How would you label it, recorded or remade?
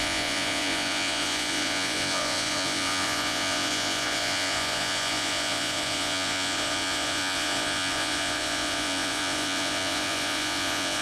remade